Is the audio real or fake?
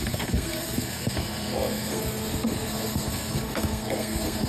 fake